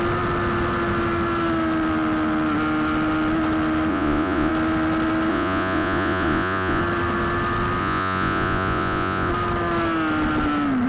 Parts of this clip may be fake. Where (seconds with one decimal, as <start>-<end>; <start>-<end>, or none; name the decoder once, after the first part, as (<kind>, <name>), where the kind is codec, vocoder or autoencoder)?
3.9-4.5 (vocoder, Vocos); 5.3-6.8; 7.8-9.3